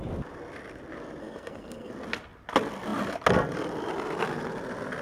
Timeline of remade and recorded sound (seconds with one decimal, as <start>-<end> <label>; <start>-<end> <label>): 0.0-1.2 recorded; 1.2-1.9 remade; 1.9-5.0 recorded